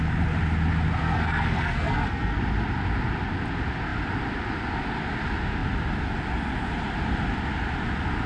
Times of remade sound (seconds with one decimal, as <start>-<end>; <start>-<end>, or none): 1.0-2.4